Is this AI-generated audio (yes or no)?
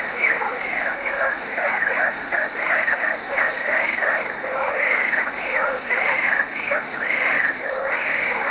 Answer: yes